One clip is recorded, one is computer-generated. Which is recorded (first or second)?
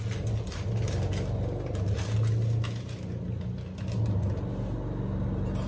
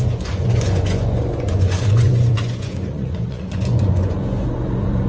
first